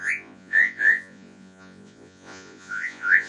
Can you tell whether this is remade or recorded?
remade